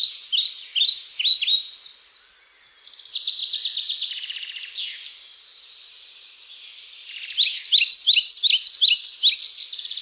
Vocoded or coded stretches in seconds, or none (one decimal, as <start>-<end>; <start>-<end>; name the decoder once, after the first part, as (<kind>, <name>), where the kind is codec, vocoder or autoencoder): none